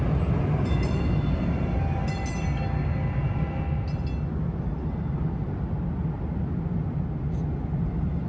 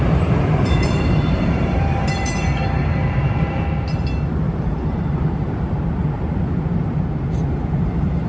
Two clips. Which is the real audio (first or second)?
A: first